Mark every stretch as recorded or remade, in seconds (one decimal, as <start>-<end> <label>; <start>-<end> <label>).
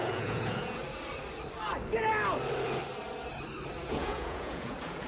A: 0.0-0.8 remade; 0.8-3.9 recorded; 3.9-5.1 remade